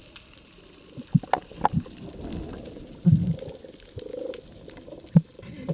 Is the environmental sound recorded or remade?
recorded